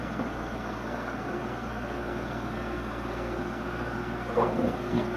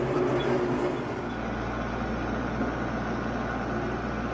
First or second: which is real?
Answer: second